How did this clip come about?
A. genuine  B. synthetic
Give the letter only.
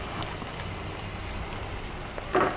A